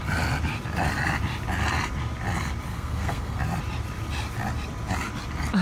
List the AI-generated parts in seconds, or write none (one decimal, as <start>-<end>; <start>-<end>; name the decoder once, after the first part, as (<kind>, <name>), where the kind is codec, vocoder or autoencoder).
2.7-3.4 (codec, SNAC)